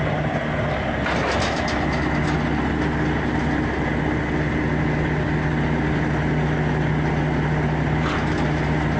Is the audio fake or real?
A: real